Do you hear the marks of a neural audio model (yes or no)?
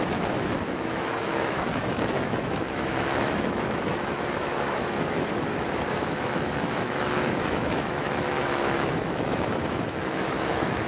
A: yes